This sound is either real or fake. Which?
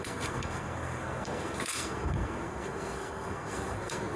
fake